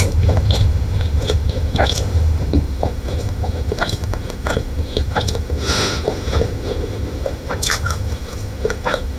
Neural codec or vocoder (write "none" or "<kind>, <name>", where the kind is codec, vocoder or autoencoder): autoencoder, DAC-VAE